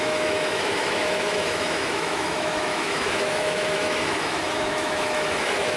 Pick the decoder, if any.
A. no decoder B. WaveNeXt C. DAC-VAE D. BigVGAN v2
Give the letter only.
C